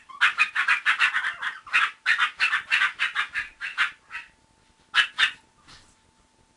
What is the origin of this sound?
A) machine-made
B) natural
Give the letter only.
B